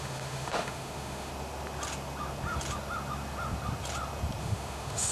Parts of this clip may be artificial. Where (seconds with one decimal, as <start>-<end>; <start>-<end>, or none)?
0.0-1.3; 4.4-5.1